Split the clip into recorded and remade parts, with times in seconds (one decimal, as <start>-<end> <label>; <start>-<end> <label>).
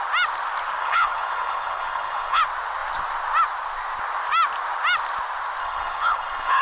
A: 0.0-0.8 recorded; 0.8-2.4 remade; 2.4-5.6 recorded; 5.6-6.6 remade